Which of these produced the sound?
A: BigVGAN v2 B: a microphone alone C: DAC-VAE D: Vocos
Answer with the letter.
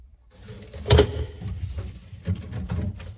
B